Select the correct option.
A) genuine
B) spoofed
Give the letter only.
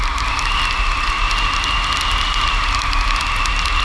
A